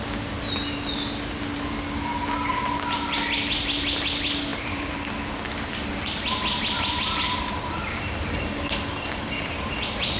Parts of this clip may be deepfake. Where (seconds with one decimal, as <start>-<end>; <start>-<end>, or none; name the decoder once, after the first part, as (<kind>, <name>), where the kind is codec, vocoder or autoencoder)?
none